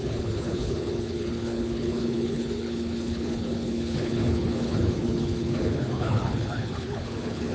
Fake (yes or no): yes